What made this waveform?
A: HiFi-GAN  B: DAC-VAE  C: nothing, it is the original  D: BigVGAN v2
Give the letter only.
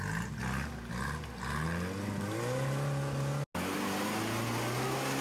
C